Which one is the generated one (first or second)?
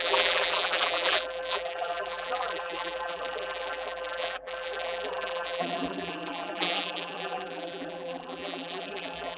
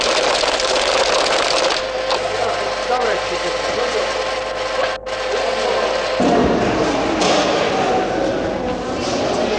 first